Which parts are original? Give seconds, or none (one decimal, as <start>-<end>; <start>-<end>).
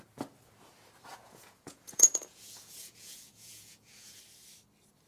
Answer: 0.0-1.1; 4.2-5.1